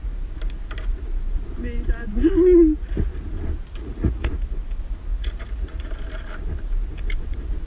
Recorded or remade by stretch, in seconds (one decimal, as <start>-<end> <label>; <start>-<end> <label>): 0.0-3.8 recorded; 3.8-4.3 remade; 4.3-5.1 recorded; 5.1-5.9 remade; 5.9-7.7 recorded